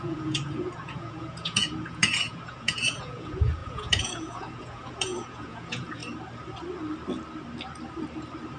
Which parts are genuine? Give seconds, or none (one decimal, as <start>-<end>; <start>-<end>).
6.0-8.6